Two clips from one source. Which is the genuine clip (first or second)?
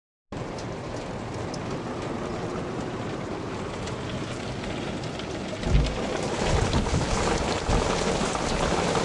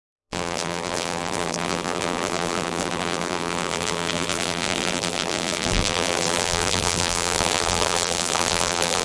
first